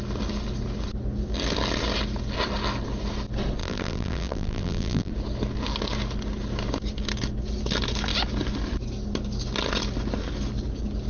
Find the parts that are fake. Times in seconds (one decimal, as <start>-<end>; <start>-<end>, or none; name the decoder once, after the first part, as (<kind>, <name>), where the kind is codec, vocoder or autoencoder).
3.6-5.1 (vocoder, BigVGAN v2)